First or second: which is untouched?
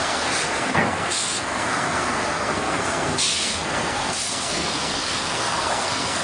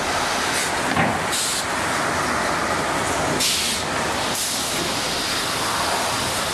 second